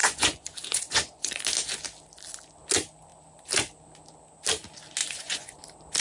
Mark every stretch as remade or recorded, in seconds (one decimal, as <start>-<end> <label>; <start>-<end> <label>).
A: 0.0-1.4 remade; 1.4-5.0 recorded; 5.0-5.6 remade; 5.6-6.0 recorded

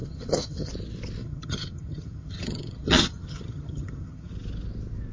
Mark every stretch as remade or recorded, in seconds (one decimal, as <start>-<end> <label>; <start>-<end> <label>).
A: 0.0-0.7 remade; 0.7-1.2 recorded; 1.2-4.3 remade; 4.3-5.1 recorded

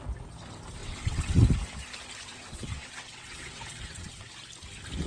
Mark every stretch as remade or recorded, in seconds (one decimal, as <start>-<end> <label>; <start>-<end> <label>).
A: 0.0-0.8 recorded; 0.8-1.5 remade; 1.5-2.3 recorded; 2.3-4.3 remade; 4.3-5.1 recorded

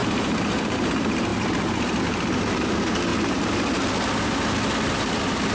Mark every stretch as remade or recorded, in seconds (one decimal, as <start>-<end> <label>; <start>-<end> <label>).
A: 0.0-3.1 remade; 3.1-5.0 recorded; 5.0-5.5 remade